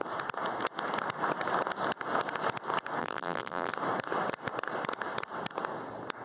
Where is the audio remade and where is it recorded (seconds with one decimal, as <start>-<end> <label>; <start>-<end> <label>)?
0.0-3.0 recorded; 3.0-3.7 remade; 3.7-6.2 recorded